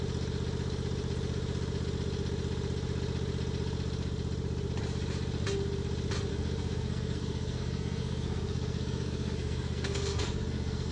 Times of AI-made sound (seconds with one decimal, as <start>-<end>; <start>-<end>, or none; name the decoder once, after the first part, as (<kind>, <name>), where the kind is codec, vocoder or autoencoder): 6.3-10.9 (codec, SNAC)